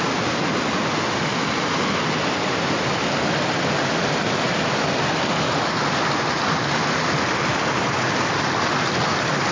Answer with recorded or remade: recorded